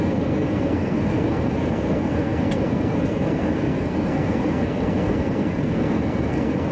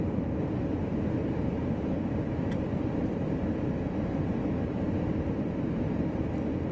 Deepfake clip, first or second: first